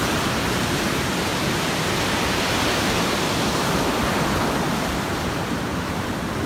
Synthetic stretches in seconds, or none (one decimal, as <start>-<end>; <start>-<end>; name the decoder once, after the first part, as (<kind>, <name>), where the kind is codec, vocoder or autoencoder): 0.0-1.3 (vocoder, BigVGAN v2); 2.5-6.5